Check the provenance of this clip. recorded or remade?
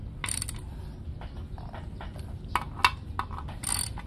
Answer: recorded